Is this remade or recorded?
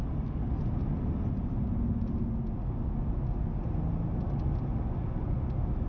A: recorded